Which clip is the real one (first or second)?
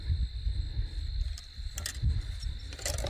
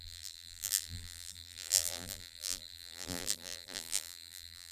first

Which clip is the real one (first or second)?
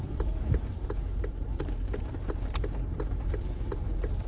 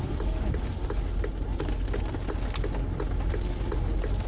second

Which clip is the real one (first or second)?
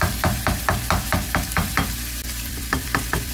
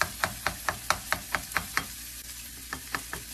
second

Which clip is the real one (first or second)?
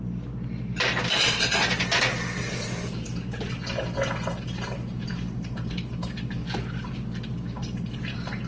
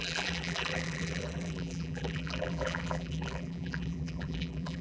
first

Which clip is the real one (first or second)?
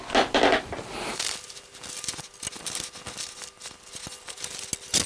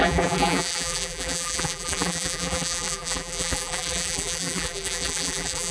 first